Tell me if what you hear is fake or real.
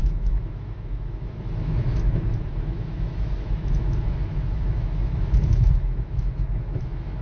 fake